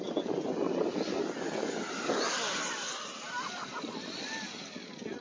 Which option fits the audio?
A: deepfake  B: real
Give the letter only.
B